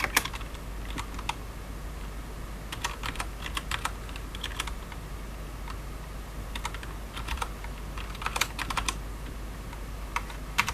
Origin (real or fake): real